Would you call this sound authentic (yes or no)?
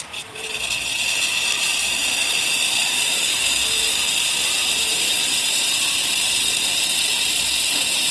no